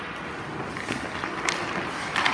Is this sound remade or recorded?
recorded